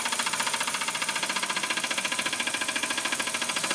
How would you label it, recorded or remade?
recorded